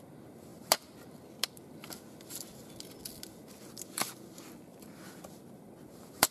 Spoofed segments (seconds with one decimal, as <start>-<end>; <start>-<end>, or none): 4.7-5.6